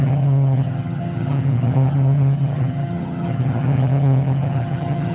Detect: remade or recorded remade